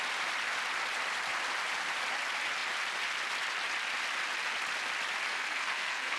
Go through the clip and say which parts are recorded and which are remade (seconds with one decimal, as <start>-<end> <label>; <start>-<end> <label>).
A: 0.0-5.3 recorded; 5.3-6.2 remade